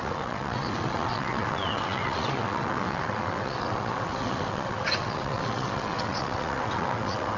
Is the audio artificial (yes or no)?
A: yes